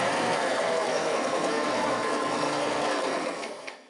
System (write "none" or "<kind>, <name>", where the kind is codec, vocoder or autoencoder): codec, SNAC